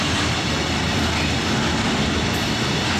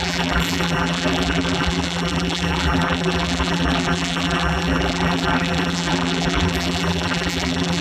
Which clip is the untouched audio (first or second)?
first